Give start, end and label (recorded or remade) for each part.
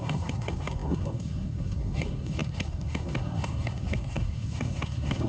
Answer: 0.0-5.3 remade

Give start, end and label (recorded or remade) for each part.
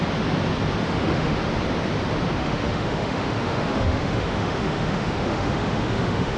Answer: 0.0-0.8 recorded; 0.8-1.4 remade; 1.4-2.4 recorded; 2.4-6.4 remade